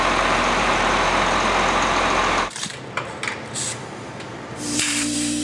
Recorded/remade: remade